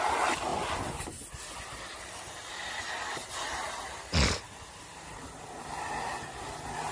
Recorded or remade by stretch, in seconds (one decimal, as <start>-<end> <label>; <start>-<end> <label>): 0.0-6.9 recorded